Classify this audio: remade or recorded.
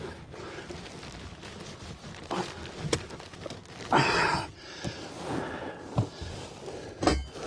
recorded